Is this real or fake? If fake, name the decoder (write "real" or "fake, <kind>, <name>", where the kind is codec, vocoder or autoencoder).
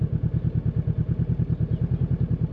real